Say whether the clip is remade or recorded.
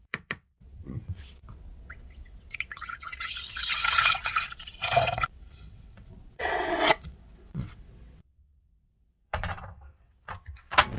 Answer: remade